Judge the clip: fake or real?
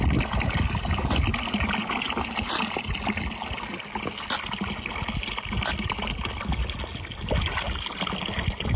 real